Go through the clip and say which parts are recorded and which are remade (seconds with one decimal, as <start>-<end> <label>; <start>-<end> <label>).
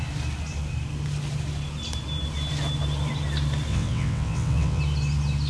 0.0-3.7 recorded; 3.7-4.8 remade; 4.8-5.5 recorded